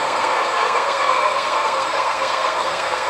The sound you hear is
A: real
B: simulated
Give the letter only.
B